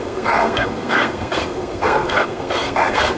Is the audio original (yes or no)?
no